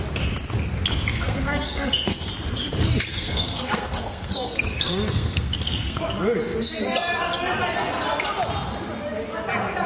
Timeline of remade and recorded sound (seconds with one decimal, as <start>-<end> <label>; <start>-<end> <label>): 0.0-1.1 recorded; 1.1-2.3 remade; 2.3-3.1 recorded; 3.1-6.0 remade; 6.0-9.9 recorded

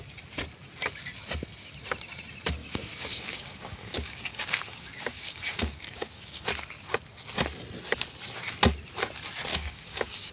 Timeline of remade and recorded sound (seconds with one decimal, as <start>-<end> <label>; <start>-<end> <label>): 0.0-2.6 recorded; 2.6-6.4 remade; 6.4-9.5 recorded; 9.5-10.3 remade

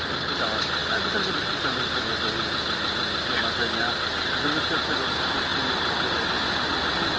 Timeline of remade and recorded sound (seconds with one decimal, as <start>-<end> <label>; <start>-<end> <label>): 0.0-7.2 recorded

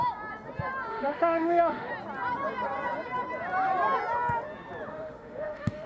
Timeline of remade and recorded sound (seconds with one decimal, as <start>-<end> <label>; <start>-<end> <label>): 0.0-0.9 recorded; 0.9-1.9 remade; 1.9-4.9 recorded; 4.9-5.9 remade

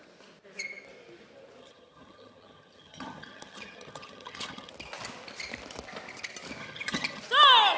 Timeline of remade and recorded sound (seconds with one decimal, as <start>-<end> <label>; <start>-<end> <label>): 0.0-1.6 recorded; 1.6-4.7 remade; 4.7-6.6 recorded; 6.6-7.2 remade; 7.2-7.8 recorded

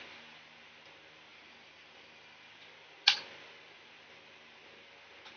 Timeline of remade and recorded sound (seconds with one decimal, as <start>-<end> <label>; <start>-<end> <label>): 0.0-1.3 recorded; 1.3-2.5 remade; 2.5-5.4 recorded